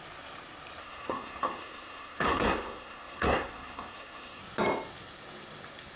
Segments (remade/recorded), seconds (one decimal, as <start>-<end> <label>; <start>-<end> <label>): 0.0-0.8 recorded; 0.8-4.4 remade; 4.4-6.0 recorded